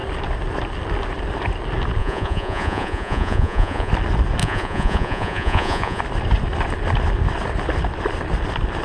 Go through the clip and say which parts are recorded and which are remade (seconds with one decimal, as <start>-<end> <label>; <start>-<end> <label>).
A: 0.0-2.0 recorded; 2.0-3.9 remade; 3.9-4.4 recorded; 4.4-6.0 remade; 6.0-8.8 recorded